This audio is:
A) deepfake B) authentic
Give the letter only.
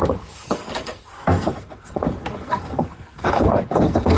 A